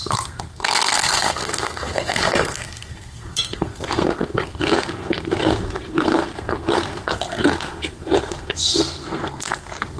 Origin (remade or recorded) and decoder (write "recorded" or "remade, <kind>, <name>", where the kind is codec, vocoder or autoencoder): remade, codec, SNAC